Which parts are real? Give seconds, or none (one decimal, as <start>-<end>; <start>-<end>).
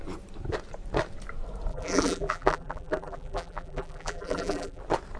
0.0-1.7; 4.8-5.2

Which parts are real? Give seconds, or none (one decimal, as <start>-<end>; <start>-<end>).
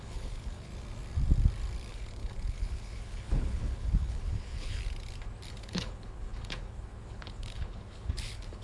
0.7-1.9; 4.8-5.6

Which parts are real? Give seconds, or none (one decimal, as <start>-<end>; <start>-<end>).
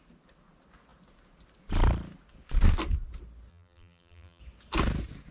0.0-3.5; 4.4-5.3